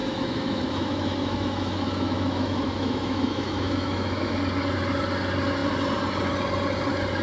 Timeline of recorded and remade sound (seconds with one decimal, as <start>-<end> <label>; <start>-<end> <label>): 0.0-4.3 remade; 4.3-7.2 recorded